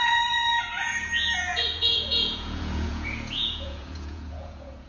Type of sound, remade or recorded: remade